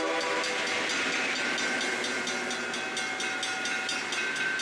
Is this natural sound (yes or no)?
yes